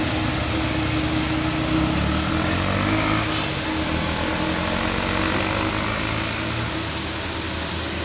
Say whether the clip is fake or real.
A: real